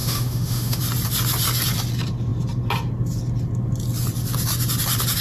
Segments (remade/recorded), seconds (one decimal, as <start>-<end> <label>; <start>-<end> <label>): 0.0-0.8 remade; 0.8-5.2 recorded